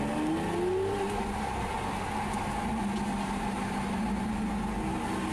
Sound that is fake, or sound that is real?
real